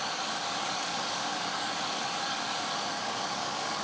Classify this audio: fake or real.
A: fake